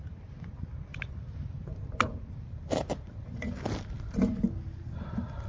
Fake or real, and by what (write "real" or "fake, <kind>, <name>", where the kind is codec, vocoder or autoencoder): real